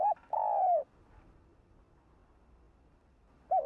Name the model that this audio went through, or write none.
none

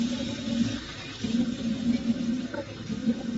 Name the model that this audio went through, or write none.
none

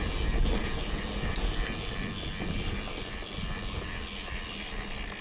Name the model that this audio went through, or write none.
none